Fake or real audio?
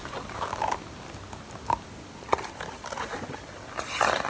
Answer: real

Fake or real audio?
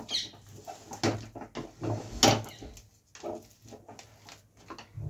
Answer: real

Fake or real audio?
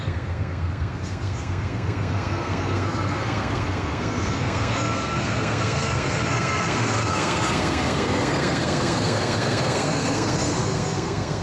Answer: fake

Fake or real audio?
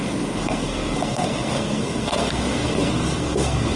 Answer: fake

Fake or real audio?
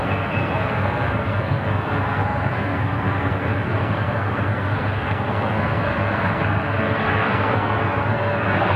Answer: fake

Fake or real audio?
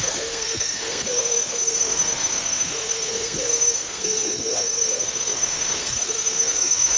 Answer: fake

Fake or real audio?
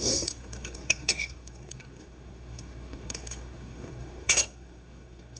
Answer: fake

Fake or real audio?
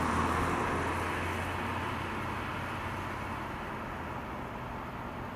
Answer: real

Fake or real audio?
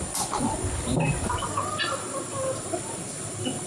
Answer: real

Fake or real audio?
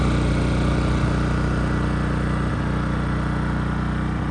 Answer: real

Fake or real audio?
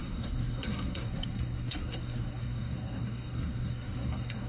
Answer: fake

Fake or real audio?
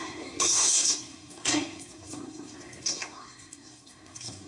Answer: fake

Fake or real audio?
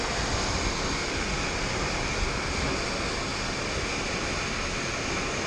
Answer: real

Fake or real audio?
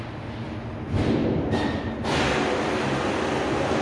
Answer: real